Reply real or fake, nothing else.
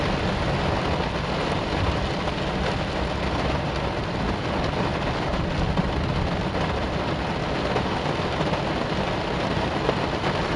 real